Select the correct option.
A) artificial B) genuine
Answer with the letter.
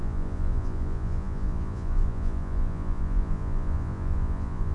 A